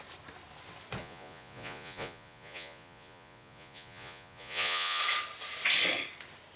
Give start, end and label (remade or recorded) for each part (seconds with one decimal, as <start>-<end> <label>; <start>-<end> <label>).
0.0-1.0 recorded; 1.0-5.0 remade; 5.0-6.6 recorded